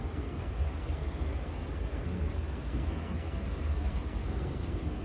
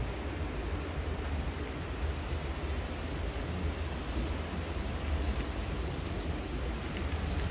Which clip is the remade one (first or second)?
first